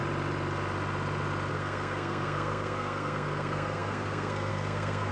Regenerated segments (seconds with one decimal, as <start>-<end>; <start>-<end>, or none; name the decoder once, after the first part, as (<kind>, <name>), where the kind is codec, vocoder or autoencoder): 1.5-5.1 (codec, SNAC)